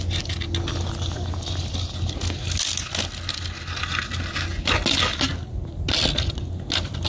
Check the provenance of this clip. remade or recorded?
recorded